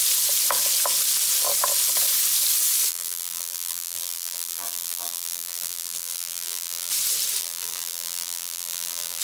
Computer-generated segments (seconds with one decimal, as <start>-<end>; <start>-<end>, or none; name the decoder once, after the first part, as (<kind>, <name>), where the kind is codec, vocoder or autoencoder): 2.9-6.9 (vocoder, BigVGAN v2); 7.4-9.2